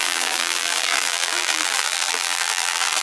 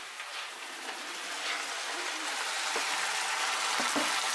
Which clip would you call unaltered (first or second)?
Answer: second